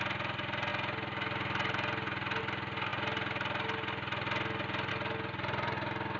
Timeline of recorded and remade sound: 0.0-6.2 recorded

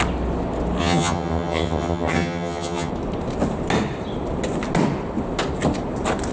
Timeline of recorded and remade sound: 0.0-0.8 recorded; 0.8-2.9 remade; 2.9-6.3 recorded

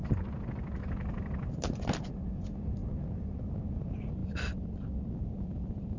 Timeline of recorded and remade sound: 0.0-6.0 recorded

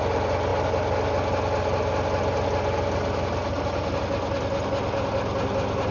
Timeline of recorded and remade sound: 0.0-5.9 recorded

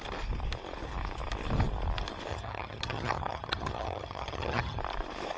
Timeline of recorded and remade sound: 0.0-2.3 recorded; 2.3-4.8 remade; 4.8-5.4 recorded

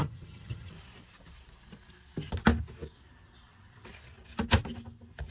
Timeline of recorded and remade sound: 0.0-0.7 remade; 0.7-5.3 recorded

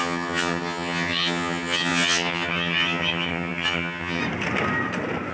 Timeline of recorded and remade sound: 0.0-4.2 remade; 4.2-5.3 recorded

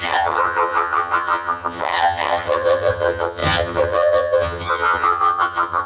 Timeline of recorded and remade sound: 0.0-5.9 remade